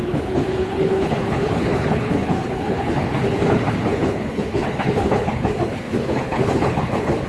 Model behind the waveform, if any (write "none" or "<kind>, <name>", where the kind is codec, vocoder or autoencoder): codec, HILCodec